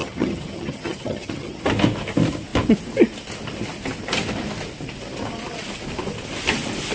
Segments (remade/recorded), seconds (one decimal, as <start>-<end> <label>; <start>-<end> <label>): 0.0-1.6 remade; 1.6-6.9 recorded